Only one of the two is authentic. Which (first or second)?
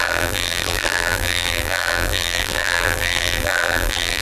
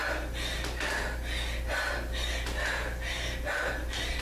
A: second